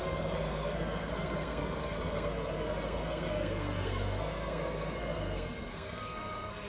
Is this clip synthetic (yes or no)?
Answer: yes